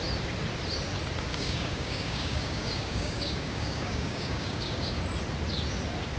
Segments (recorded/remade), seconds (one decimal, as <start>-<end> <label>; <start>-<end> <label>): 0.0-1.3 recorded; 1.3-5.0 remade; 5.0-6.2 recorded